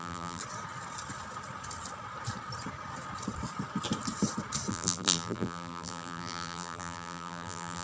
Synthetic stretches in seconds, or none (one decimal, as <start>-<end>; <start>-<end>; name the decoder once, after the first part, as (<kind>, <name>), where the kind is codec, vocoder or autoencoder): 0.0-0.4 (vocoder, BigVGAN v2); 4.7-7.8